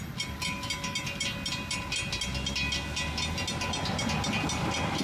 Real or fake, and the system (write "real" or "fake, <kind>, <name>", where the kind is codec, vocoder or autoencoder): real